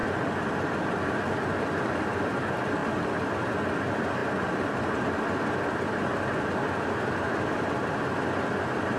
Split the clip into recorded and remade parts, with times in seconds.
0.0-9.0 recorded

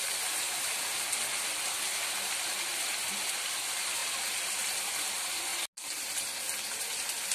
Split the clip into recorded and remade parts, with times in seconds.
0.0-5.5 remade; 5.5-6.8 recorded; 6.8-7.3 remade

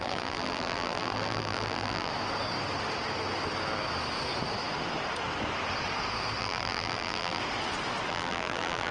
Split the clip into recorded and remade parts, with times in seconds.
0.0-2.1 remade; 2.1-6.4 recorded; 6.4-7.4 remade; 7.4-8.1 recorded; 8.1-8.9 remade

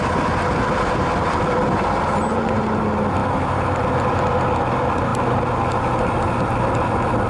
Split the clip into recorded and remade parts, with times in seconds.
0.0-2.3 recorded; 2.3-2.8 remade; 2.8-7.3 recorded

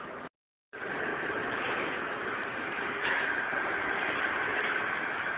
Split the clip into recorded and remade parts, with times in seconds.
0.0-1.1 recorded; 1.1-3.4 remade; 3.4-4.5 recorded; 4.5-5.4 remade